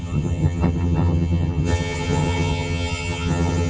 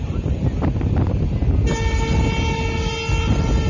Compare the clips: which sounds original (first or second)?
second